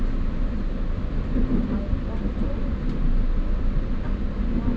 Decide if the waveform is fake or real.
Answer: real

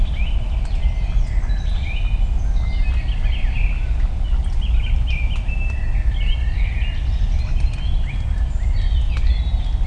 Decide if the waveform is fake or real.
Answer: real